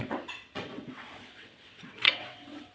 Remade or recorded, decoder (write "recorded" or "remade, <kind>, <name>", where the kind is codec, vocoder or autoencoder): remade, vocoder, WaveNeXt